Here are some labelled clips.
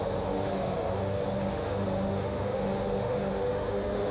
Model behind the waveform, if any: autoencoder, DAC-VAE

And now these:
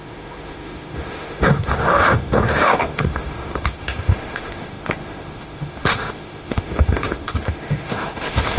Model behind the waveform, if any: autoencoder, DAC-VAE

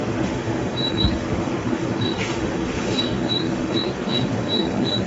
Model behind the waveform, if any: autoencoder, DAC-VAE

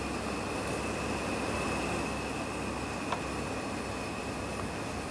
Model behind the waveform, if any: none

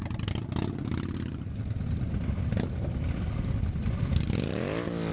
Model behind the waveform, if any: none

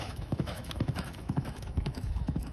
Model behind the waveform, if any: autoencoder, DAC-VAE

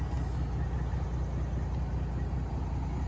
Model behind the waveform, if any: none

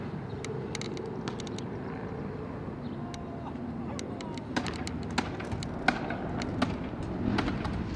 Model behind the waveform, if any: none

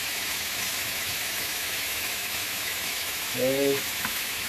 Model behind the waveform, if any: autoencoder, DAC-VAE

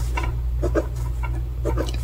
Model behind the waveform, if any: none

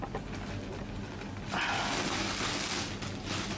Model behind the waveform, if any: none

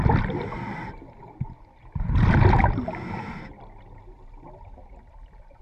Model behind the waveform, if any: none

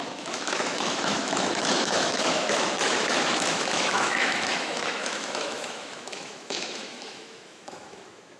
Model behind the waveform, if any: autoencoder, DAC-VAE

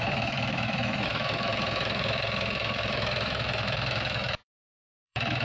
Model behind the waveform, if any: autoencoder, DAC-VAE